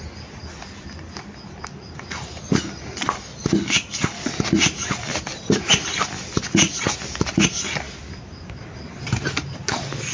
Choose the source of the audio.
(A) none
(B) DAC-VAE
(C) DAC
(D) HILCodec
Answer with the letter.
A